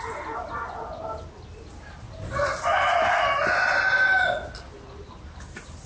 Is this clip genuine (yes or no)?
yes